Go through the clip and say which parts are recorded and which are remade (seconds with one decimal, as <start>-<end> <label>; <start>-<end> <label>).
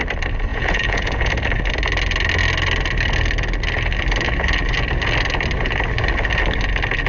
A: 0.0-0.5 recorded; 0.5-1.3 remade; 1.3-7.1 recorded